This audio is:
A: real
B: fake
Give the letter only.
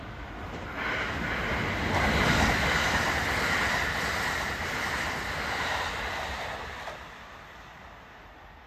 A